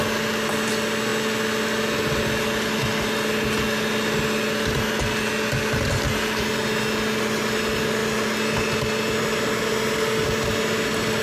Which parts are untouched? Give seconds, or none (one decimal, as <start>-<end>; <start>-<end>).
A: 0.0-11.2